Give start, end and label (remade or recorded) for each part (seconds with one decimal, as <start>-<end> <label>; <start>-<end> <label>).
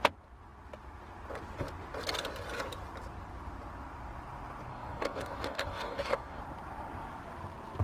0.0-4.7 recorded; 4.7-6.4 remade; 6.4-7.8 recorded